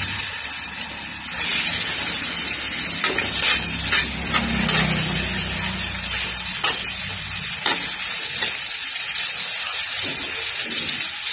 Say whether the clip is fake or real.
real